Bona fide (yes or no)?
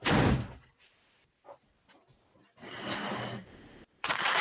no